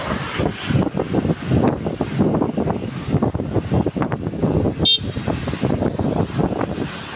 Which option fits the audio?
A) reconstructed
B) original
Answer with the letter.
B